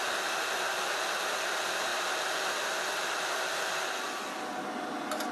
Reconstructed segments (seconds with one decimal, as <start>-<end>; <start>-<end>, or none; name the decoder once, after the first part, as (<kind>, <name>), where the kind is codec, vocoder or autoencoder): none